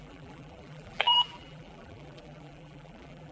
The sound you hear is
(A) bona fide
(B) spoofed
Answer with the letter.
B